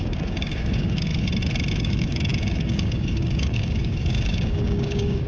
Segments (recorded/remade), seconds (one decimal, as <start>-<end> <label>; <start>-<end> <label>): 0.0-1.1 remade; 1.1-1.8 recorded; 1.8-5.3 remade